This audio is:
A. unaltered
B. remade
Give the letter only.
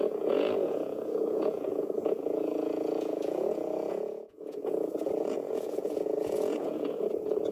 B